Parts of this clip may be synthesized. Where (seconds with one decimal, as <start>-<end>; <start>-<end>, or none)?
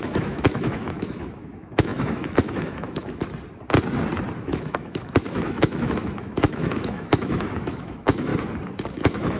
0.0-3.2; 4.4-8.3; 8.9-9.4